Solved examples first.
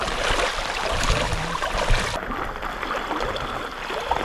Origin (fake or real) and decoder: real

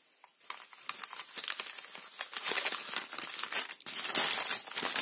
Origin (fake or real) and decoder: real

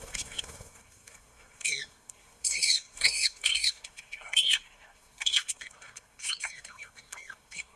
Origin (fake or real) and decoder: fake, codec, SNAC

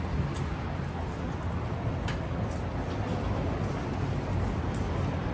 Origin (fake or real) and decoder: real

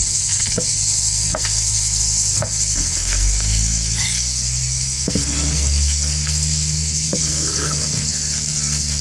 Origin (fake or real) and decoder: fake, codec, SNAC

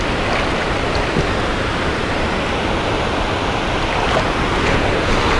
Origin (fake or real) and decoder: real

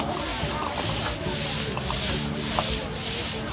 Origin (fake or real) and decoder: real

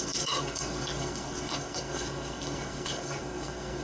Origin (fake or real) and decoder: fake, codec, SNAC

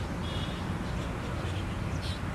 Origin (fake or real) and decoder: real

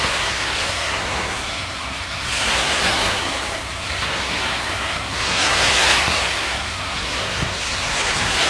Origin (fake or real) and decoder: fake, codec, SNAC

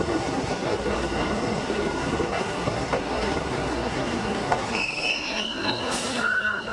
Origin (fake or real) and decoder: fake, codec, SNAC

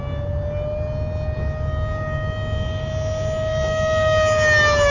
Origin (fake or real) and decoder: real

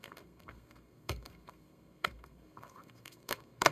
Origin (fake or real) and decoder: fake, codec, SNAC